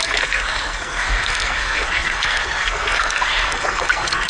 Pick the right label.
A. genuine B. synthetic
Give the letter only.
B